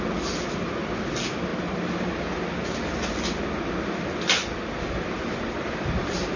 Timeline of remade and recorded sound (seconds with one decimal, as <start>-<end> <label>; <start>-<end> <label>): 0.0-6.4 recorded